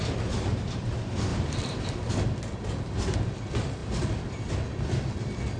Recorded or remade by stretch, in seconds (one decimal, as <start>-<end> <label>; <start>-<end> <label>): 0.0-1.3 recorded; 1.3-2.1 remade; 2.1-3.8 recorded; 3.8-4.5 remade; 4.5-5.6 recorded